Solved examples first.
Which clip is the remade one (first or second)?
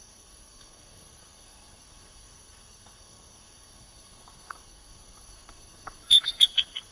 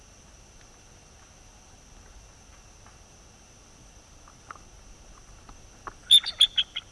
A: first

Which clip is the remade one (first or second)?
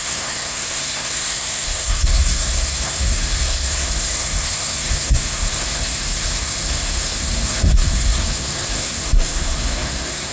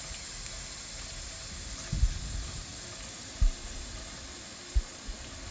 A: first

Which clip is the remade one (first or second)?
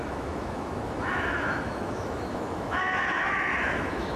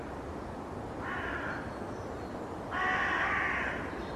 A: first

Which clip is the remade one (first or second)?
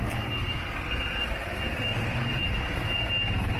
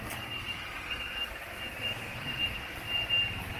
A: second